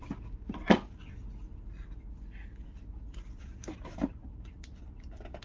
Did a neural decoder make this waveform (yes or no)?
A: no